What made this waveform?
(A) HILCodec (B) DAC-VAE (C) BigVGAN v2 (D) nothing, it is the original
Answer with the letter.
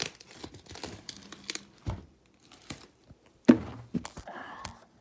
D